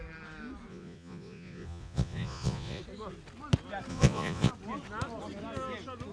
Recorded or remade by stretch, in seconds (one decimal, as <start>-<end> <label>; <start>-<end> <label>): 0.0-0.7 recorded; 0.7-2.8 remade; 2.8-3.9 recorded; 3.9-4.5 remade; 4.5-6.1 recorded